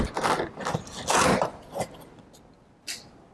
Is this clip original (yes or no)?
yes